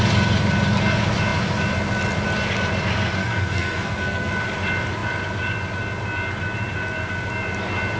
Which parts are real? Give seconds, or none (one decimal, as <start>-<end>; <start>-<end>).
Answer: 0.0-3.2; 4.3-8.0